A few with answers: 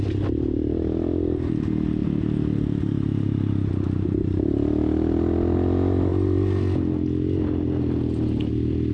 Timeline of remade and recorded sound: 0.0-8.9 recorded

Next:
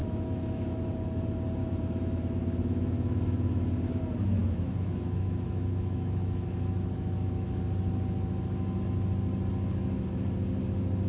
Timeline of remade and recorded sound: 0.0-0.8 remade; 0.8-1.6 recorded; 1.6-4.0 remade; 4.0-4.4 recorded; 4.4-7.6 remade; 7.6-11.1 recorded